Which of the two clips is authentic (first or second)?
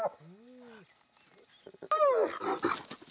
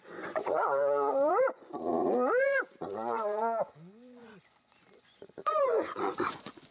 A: first